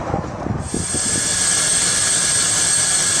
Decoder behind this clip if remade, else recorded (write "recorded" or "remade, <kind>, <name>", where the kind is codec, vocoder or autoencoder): recorded